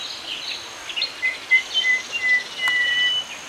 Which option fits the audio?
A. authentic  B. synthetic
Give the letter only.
A